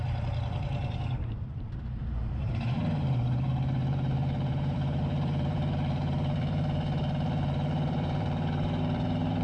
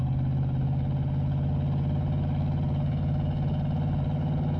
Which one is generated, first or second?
first